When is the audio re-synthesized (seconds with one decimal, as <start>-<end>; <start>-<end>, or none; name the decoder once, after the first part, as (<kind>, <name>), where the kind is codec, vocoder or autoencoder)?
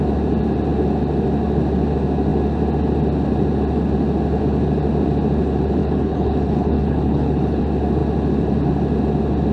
5.8-7.6 (codec, HILCodec)